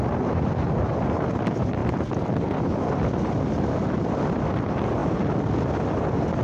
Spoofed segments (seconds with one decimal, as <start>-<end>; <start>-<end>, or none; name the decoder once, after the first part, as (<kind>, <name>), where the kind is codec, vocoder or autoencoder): none